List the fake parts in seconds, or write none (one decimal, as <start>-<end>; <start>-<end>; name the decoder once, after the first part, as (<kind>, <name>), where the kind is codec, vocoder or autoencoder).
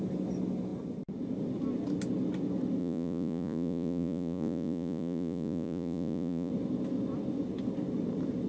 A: 2.8-6.5 (vocoder, Vocos)